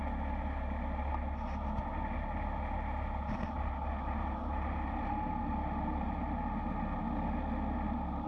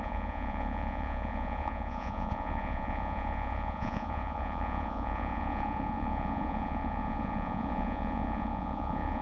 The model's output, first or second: second